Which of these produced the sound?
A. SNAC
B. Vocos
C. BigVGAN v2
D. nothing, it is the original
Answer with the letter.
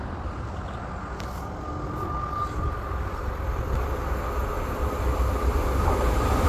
D